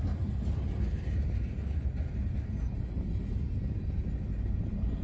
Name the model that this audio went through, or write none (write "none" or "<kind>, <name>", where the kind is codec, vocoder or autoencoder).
none